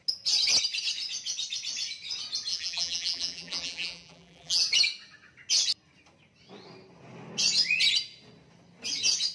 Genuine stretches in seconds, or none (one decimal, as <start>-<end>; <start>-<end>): 0.0-2.5; 4.6-9.3